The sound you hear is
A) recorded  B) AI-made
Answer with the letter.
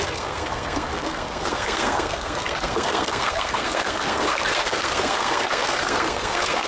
B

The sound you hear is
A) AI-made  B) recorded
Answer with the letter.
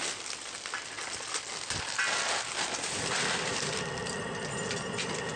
B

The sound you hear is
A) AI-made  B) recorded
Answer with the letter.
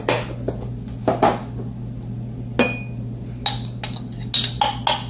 B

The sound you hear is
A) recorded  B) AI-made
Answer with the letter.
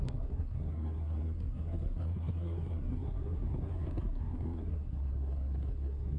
B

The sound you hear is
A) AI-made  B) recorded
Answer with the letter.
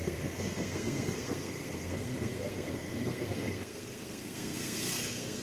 A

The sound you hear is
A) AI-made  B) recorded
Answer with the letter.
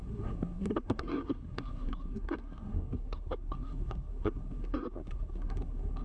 A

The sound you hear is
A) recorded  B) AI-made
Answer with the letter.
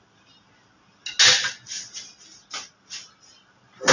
A